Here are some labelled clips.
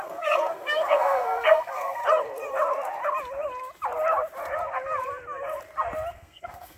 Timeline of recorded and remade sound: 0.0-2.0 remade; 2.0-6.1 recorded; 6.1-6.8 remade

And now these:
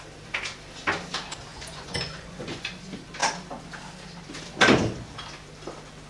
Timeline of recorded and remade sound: 0.0-1.5 recorded; 1.5-2.7 remade; 2.7-6.1 recorded

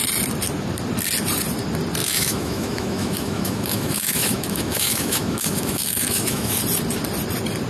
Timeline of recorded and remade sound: 0.0-2.0 recorded; 2.0-6.6 remade; 6.6-7.7 recorded

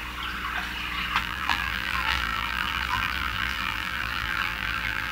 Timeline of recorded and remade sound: 0.0-1.2 recorded; 1.2-5.1 remade

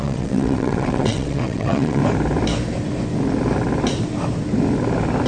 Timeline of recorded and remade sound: 0.0-2.0 remade; 2.0-5.3 recorded